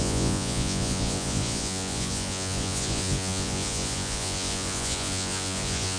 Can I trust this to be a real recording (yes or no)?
no